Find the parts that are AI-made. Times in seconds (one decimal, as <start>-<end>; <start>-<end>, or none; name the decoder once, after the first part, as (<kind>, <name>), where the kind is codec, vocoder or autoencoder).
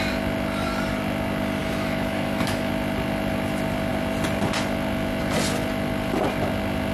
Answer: 1.6-2.7 (autoencoder, DAC-VAE)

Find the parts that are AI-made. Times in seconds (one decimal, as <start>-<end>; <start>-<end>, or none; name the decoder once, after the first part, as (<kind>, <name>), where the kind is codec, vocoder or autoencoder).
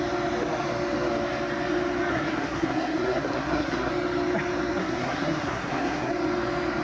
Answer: 2.1-3.9 (codec, SNAC); 4.8-6.1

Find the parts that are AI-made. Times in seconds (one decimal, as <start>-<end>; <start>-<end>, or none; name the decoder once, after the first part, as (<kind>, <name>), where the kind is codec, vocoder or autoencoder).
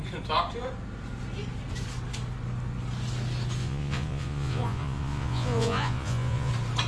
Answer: 3.6-6.5 (vocoder, Vocos)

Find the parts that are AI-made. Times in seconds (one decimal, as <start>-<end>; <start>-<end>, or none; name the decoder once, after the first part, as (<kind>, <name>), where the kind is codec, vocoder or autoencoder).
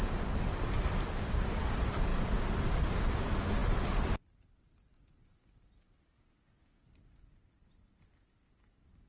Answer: 2.1-2.8 (vocoder, BigVGAN v2); 3.6-5.1